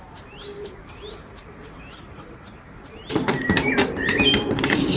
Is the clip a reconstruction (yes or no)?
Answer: yes